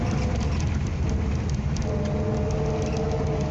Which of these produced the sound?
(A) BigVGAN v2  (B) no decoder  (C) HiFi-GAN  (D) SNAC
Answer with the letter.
B